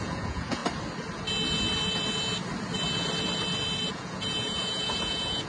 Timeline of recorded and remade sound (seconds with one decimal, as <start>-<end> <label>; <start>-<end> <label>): 0.0-0.6 remade; 0.6-3.9 recorded; 3.9-5.5 remade

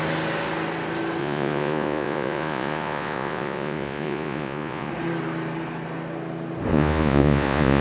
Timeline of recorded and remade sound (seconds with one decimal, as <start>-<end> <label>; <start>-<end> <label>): 0.0-1.2 recorded; 1.2-4.9 remade; 4.9-6.7 recorded; 6.7-7.8 remade

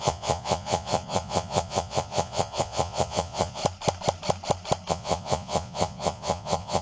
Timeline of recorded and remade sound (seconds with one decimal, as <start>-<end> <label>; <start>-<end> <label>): 0.0-3.6 remade; 3.6-4.9 recorded; 4.9-6.8 remade

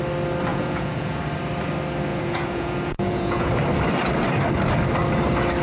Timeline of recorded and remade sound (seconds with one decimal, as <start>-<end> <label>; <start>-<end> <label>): 0.0-0.5 recorded; 0.5-1.2 remade; 1.2-2.1 recorded; 2.1-3.5 remade; 3.5-5.6 recorded

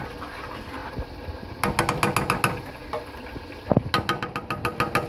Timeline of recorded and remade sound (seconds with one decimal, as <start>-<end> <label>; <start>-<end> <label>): 0.0-5.1 recorded

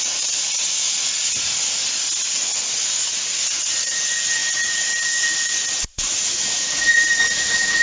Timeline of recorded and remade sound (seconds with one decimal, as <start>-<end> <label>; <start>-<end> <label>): 0.0-1.8 remade; 1.8-3.2 recorded; 3.2-7.8 remade

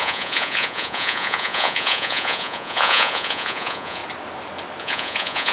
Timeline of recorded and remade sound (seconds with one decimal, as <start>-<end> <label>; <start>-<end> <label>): 0.0-4.0 remade; 4.0-4.8 recorded; 4.8-5.5 remade

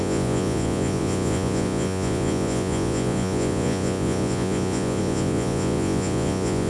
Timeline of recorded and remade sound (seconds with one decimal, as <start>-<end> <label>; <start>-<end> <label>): 0.0-6.7 remade